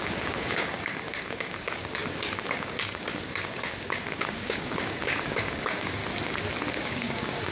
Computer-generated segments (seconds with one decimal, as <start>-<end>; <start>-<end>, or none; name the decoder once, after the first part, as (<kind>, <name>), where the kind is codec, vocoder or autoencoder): 0.0-6.0 (codec, DAC); 6.7-7.5